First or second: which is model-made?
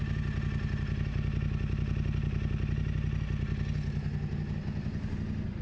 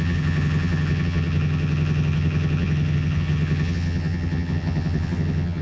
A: second